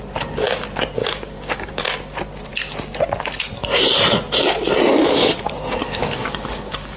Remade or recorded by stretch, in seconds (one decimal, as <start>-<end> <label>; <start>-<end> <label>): 0.0-1.0 recorded; 1.0-1.8 remade; 1.8-5.8 recorded; 5.8-7.0 remade